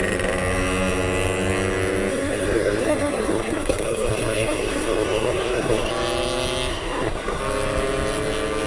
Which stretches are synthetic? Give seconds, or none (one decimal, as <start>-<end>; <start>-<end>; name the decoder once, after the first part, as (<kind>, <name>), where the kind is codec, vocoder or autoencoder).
2.1-5.9 (codec, SNAC); 6.7-7.4